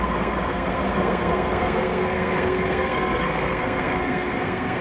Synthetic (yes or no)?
yes